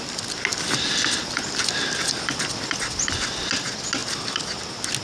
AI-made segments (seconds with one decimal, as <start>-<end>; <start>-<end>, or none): none